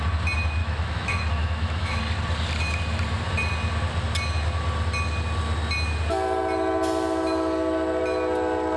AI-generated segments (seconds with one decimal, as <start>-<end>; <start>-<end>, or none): 0.6-2.0